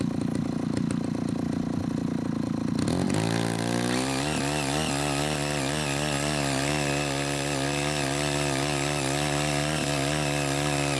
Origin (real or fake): real